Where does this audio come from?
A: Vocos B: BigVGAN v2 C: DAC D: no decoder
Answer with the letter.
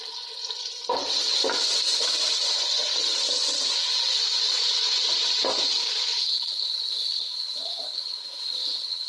D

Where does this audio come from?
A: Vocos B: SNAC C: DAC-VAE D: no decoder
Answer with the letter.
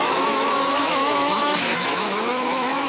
C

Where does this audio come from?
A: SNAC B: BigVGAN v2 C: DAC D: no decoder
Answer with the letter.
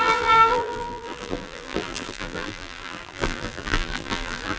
B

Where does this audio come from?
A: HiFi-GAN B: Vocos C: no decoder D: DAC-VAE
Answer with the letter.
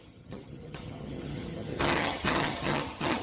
A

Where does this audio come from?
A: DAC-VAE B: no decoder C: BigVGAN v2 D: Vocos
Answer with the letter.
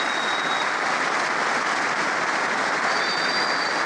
B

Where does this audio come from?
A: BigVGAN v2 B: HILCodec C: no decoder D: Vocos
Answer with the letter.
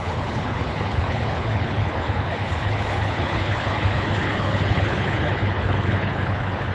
B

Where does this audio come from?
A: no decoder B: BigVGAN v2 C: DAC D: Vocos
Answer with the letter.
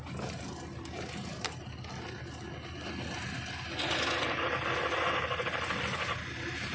A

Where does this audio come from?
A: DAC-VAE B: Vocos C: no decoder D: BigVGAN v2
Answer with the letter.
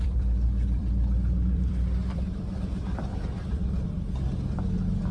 D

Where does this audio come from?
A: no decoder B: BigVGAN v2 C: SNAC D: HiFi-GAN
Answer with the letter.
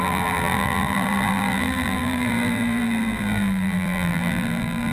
B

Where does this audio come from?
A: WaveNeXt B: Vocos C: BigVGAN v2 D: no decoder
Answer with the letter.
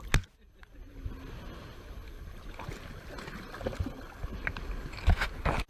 D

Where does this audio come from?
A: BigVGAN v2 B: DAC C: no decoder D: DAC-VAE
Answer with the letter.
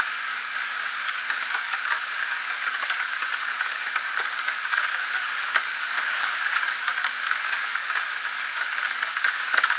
B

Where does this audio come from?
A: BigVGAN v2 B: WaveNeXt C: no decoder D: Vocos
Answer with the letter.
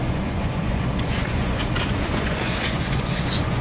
D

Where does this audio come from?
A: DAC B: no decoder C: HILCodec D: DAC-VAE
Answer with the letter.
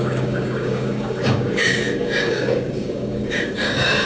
A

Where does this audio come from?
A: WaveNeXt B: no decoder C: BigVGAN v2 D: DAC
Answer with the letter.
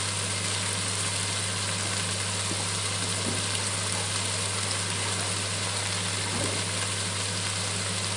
B